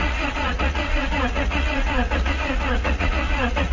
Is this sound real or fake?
fake